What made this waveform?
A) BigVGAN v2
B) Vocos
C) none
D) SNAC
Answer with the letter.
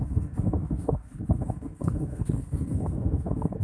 D